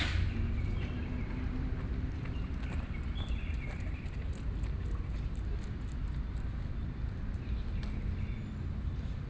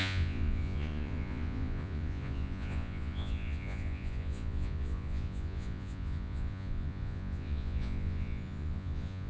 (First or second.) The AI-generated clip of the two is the second